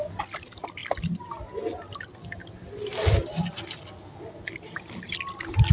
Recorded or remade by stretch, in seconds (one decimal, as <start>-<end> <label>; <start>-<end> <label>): 0.0-5.7 recorded